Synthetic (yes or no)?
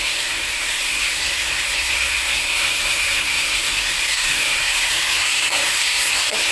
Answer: yes